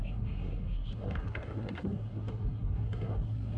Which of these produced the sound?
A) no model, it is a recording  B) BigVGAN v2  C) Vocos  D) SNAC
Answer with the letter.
D